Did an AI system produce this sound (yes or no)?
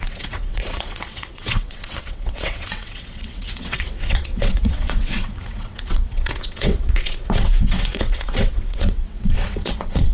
yes